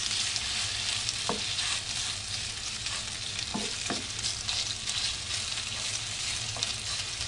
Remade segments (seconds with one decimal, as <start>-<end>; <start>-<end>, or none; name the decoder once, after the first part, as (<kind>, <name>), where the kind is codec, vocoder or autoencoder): none